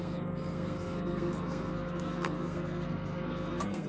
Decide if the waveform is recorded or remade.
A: remade